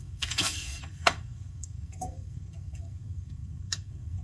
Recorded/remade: remade